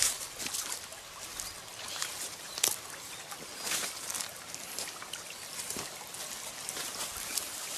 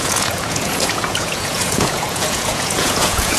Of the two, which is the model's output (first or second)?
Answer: second